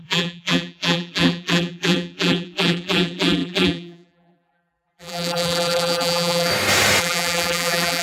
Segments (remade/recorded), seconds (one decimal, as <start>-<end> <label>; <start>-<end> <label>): 0.0-6.5 remade; 6.5-7.0 recorded; 7.0-8.0 remade